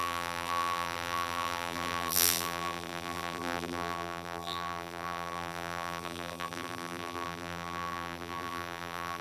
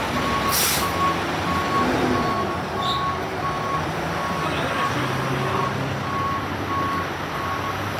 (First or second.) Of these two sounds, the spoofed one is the first